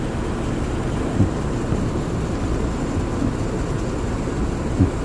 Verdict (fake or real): real